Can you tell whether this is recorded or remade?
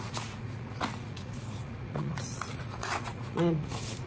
remade